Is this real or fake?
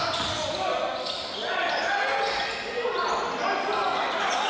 real